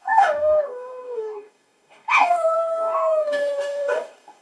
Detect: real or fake fake